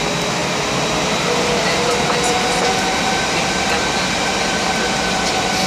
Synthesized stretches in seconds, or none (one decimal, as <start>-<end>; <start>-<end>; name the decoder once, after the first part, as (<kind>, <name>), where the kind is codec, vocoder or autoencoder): none